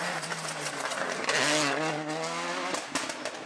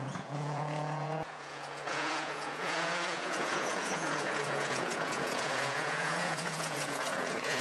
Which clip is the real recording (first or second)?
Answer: first